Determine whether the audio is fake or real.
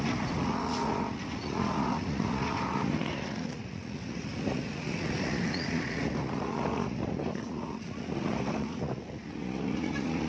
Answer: fake